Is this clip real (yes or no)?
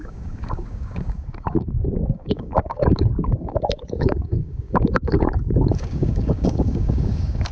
no